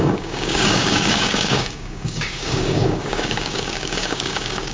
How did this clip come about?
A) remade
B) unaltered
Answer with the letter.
A